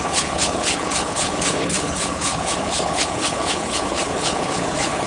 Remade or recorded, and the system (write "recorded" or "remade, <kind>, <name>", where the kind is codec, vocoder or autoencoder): remade, codec, HILCodec